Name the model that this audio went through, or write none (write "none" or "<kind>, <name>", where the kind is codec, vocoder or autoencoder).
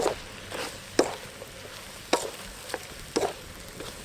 none